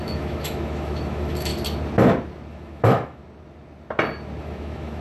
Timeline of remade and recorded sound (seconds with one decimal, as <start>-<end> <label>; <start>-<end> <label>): 0.0-1.5 remade; 1.5-2.5 recorded; 2.5-3.2 remade; 3.2-4.4 recorded; 4.4-5.0 remade